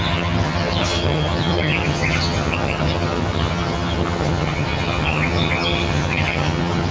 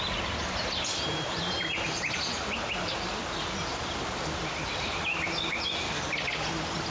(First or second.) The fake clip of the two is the first